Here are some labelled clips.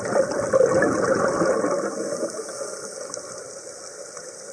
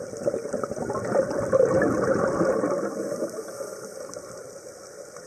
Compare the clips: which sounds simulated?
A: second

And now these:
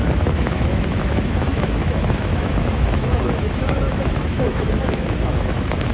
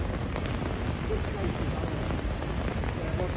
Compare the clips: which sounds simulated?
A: first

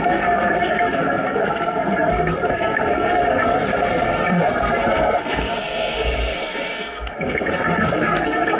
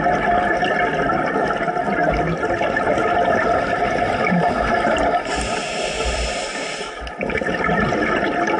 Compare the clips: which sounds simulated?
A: first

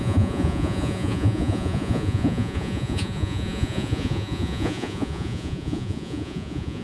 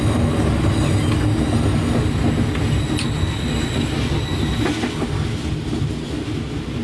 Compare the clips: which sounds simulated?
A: first